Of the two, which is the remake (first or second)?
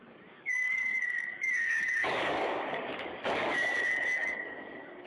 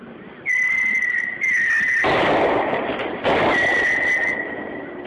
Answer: first